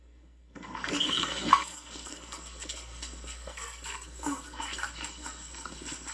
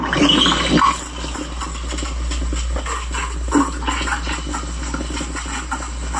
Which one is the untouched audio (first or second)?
second